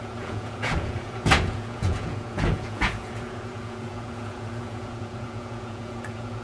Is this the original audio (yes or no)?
no